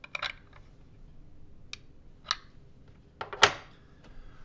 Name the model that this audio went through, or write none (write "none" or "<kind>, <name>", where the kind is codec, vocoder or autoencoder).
none